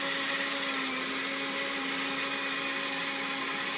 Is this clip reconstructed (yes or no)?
no